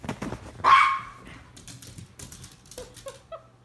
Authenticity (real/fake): real